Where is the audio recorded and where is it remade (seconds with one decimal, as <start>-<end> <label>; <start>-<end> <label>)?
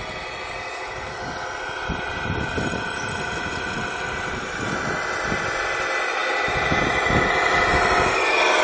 0.0-8.6 recorded